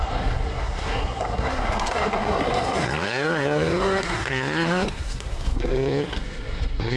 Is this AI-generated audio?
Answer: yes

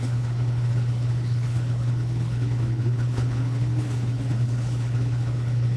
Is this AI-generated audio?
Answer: yes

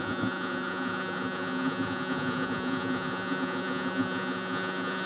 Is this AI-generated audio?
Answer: yes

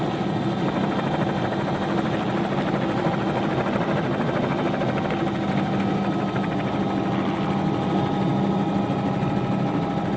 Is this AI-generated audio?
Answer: no